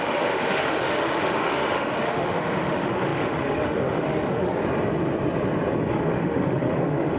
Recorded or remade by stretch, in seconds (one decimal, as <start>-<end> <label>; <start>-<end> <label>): 0.0-4.5 remade; 4.5-5.9 recorded; 5.9-7.2 remade